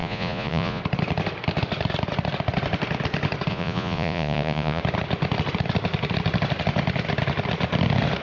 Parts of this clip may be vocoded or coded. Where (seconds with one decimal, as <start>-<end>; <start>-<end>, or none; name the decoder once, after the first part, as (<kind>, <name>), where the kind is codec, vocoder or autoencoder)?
0.0-0.8 (vocoder, Vocos); 3.5-4.8